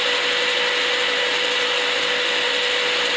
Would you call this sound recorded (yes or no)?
yes